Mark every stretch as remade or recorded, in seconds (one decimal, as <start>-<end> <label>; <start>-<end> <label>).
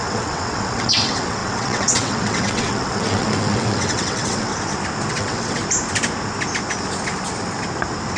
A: 0.0-4.5 remade; 4.5-5.1 recorded; 5.1-5.6 remade; 5.6-8.2 recorded